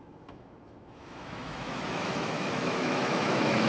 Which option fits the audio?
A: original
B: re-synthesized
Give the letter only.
B